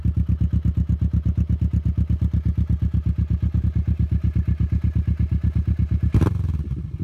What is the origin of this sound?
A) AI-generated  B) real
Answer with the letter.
B